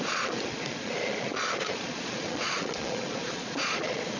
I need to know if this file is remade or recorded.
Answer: remade